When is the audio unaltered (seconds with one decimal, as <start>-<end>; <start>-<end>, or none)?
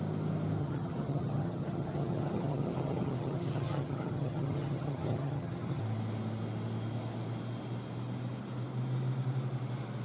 0.0-0.6; 5.8-10.0